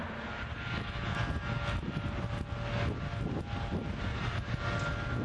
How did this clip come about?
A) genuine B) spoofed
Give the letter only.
A